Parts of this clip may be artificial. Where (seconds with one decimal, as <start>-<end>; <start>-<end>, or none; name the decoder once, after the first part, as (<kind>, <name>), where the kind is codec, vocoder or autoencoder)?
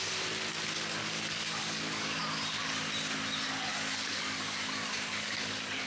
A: 1.0-2.2 (codec, DAC); 3.7-5.9